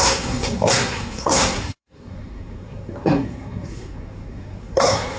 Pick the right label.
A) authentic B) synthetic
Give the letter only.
B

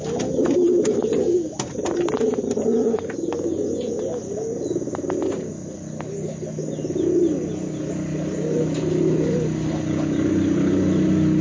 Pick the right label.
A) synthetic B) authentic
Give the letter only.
B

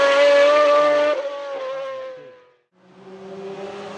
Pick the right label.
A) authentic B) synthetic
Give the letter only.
A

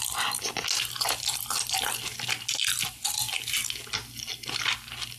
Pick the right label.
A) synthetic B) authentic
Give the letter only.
B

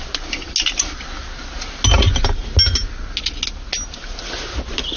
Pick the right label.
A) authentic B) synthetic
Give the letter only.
A